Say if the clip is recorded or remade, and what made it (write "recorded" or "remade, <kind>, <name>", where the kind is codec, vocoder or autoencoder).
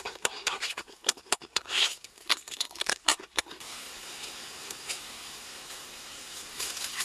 remade, codec, SNAC